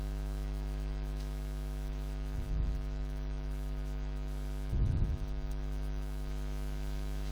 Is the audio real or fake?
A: fake